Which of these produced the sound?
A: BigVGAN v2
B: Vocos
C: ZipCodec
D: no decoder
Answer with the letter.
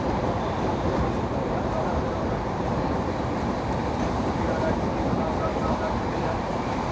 A